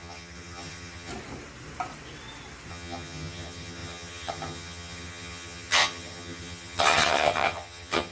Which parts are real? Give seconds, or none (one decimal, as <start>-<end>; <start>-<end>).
1.1-2.7